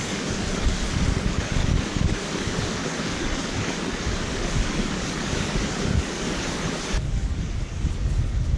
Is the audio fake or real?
fake